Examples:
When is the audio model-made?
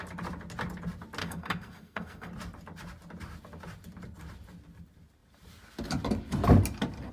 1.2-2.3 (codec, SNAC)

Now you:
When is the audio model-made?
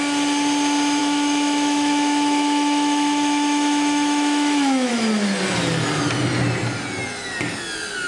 1.0-4.9 (autoencoder, DAC-VAE)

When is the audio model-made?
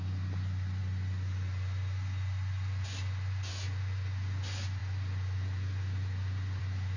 none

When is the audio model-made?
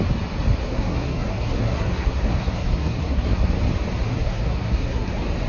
0.6-3.5 (codec, SNAC); 4.1-5.1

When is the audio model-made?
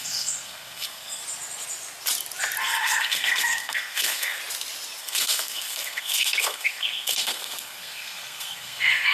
0.0-1.2 (codec, SNAC); 2.6-4.4; 5.0-9.1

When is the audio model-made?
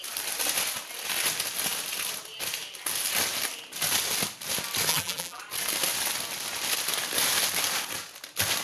4.9-5.4 (vocoder, BigVGAN v2)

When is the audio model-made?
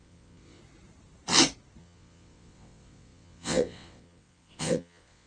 0.0-0.6 (vocoder, WaveNeXt); 1.8-5.3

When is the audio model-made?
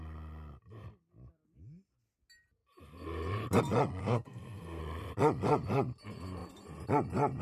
4.0-4.8 (codec, SNAC)